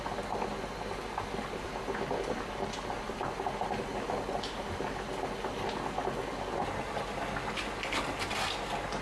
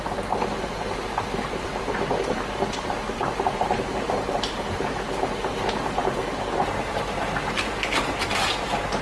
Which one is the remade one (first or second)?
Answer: second